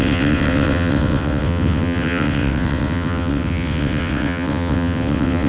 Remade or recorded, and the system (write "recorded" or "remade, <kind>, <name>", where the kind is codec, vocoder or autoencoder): remade, vocoder, WaveNeXt